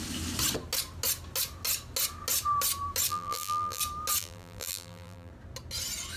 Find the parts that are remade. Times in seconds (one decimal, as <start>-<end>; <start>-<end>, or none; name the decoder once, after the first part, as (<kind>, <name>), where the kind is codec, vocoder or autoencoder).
3.1-3.8 (vocoder, BigVGAN v2); 4.2-5.3